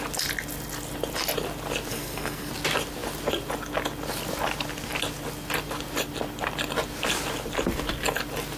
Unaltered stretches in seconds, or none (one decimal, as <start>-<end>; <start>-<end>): 0.0-1.9; 2.5-8.6